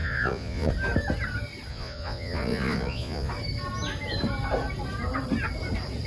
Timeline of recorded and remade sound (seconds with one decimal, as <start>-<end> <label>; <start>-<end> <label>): 0.0-0.7 remade; 0.7-1.7 recorded; 1.7-3.3 remade; 3.3-6.1 recorded